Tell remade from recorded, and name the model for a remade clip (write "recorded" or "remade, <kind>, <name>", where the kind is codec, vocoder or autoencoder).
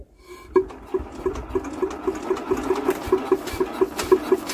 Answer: recorded